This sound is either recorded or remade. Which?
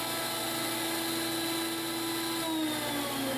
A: recorded